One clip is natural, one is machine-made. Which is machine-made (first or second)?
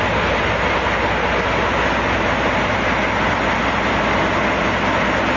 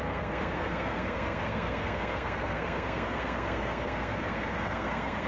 second